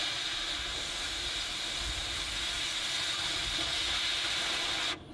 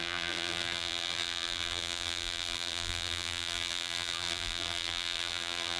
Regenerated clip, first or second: second